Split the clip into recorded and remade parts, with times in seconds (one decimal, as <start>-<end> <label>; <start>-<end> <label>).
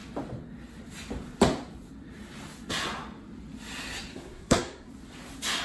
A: 0.0-4.1 recorded; 4.1-4.9 remade; 4.9-5.6 recorded